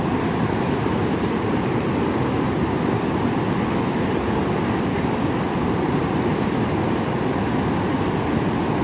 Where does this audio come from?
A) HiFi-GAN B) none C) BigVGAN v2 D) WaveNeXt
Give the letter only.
B